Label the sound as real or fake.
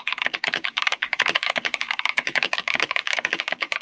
fake